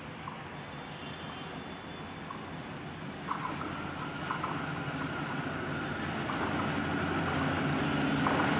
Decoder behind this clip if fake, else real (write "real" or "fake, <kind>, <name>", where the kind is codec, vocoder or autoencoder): real